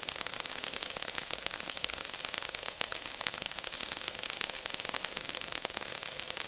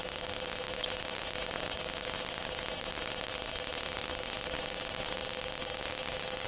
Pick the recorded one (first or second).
second